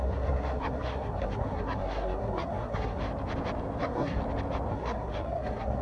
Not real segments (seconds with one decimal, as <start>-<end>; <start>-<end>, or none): 0.0-3.0; 3.8-4.2; 4.7-5.8